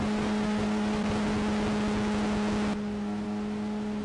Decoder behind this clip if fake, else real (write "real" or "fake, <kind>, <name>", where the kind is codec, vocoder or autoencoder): real